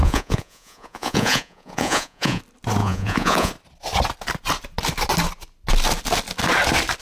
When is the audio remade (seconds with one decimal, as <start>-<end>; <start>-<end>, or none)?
0.0-2.4; 2.8-3.5